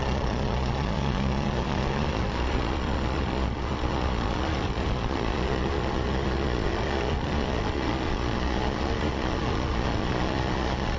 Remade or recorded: remade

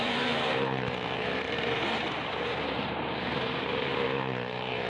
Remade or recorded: remade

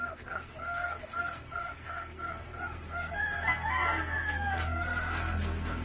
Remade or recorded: remade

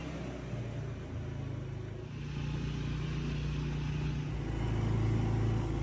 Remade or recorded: recorded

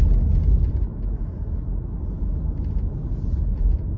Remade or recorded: recorded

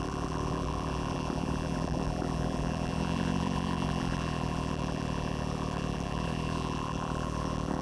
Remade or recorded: remade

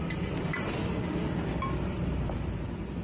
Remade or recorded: recorded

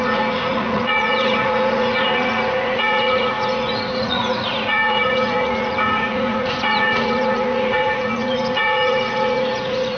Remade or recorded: remade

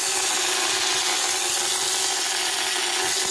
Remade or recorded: recorded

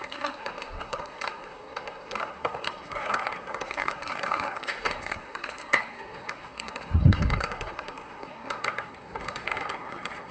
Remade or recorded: remade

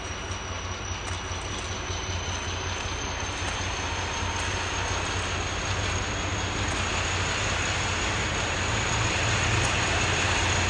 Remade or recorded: recorded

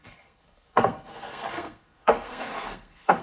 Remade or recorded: remade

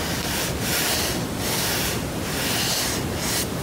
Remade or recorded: recorded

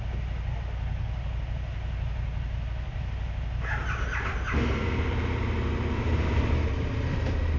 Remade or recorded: recorded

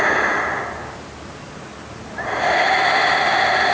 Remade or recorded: recorded